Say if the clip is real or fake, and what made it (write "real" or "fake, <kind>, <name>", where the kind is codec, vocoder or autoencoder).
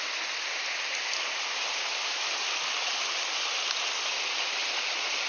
real